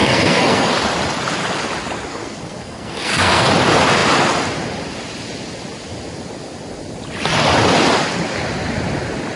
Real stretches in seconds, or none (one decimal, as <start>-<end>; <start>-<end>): 0.7-2.1; 3.5-9.4